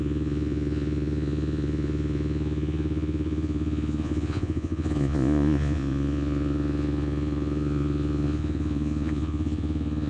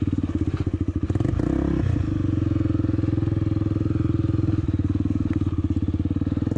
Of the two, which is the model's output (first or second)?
first